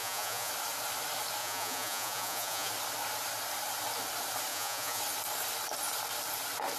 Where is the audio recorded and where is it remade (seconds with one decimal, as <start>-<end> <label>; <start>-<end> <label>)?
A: 0.0-0.5 remade; 0.5-1.4 recorded; 1.4-2.7 remade; 2.7-4.5 recorded; 4.5-5.0 remade; 5.0-6.8 recorded